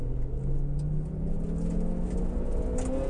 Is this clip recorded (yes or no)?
yes